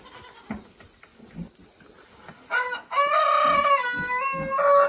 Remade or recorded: recorded